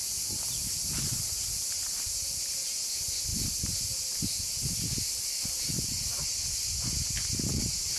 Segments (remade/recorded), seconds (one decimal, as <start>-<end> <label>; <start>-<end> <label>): 0.0-8.0 recorded